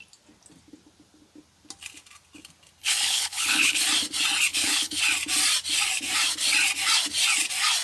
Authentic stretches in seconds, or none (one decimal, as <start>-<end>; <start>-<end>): 0.0-2.8; 3.8-4.5; 5.0-7.8